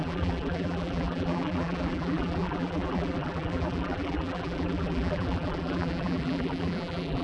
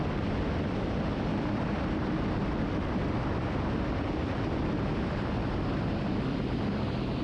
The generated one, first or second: first